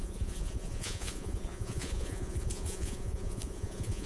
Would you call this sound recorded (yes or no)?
no